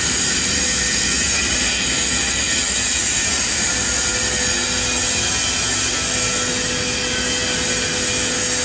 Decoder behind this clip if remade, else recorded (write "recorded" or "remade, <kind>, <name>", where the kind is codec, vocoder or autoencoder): recorded